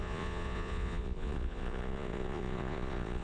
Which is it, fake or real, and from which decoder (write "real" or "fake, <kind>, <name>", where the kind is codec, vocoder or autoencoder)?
fake, vocoder, Vocos